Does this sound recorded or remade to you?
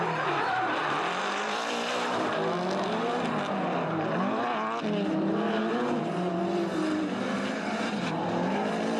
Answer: remade